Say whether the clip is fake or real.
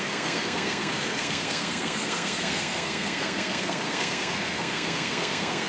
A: fake